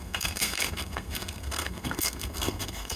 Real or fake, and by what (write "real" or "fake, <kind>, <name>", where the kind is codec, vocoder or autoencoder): fake, codec, SNAC